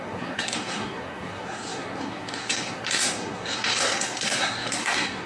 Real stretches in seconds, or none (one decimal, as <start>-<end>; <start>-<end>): none